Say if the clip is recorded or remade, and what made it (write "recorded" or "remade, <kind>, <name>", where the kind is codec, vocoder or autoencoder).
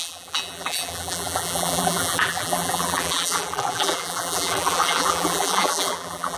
remade, vocoder, BigVGAN v2